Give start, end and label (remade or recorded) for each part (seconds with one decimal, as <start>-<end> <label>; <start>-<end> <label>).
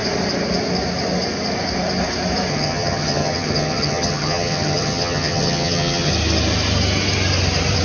0.0-2.5 recorded; 2.5-6.1 remade; 6.1-7.8 recorded